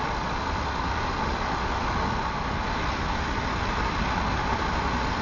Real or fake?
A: real